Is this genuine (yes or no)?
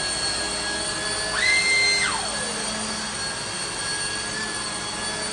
yes